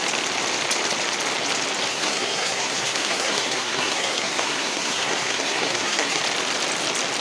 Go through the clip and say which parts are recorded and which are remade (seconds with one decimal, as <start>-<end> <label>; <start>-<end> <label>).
0.0-1.9 recorded; 1.9-6.2 remade; 6.2-7.2 recorded